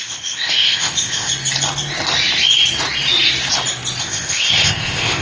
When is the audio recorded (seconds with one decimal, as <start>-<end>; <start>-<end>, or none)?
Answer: 1.3-4.0